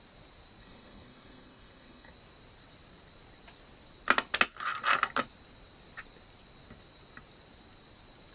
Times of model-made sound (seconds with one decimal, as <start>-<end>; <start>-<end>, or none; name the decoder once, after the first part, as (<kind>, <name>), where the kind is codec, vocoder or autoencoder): 0.6-2.1 (codec, SNAC)